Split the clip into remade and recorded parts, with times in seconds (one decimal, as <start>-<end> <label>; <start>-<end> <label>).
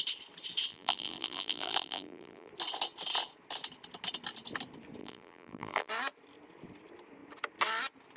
0.0-0.7 recorded; 0.7-2.5 remade; 2.5-5.0 recorded; 5.0-5.9 remade; 5.9-8.2 recorded